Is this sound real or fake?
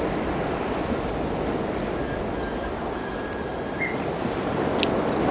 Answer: real